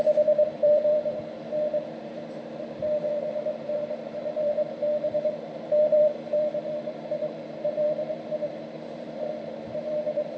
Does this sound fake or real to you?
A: fake